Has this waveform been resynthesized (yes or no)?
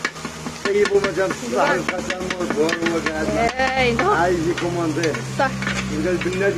no